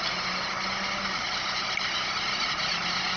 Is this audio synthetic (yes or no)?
no